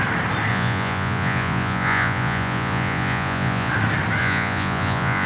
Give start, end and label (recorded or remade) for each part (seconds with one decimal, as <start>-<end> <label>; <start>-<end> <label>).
0.0-0.5 recorded; 0.5-3.7 remade; 3.7-4.2 recorded; 4.2-5.3 remade